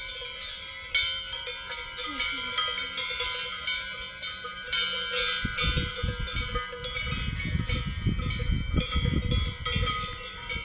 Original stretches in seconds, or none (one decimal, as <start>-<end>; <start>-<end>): 0.0-10.6